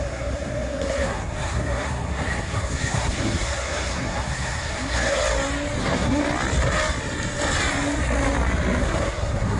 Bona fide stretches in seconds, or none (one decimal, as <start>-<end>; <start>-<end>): 5.2-5.8; 6.2-8.8